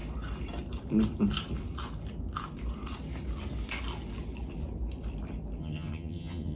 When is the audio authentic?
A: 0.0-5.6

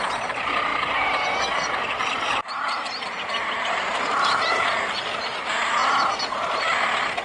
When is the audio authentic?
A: 0.0-7.2

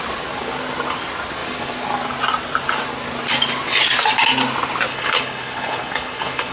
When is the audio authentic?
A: 0.0-4.9

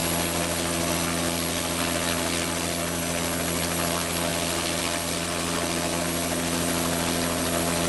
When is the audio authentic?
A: 0.0-7.9

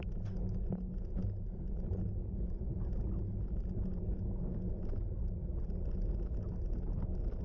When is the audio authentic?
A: 0.0-7.4

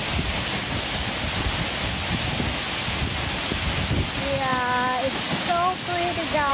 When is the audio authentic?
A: 0.0-6.5

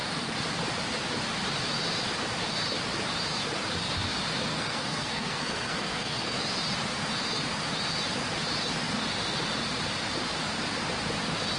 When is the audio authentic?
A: 0.0-4.5; 6.4-11.6